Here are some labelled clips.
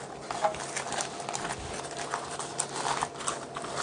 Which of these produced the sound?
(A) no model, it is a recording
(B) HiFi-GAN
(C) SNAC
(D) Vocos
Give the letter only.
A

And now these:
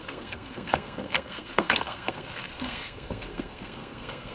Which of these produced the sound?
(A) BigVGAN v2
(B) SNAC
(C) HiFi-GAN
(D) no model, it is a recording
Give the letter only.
B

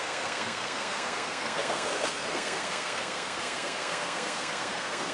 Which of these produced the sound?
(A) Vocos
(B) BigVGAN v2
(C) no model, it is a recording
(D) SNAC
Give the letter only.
D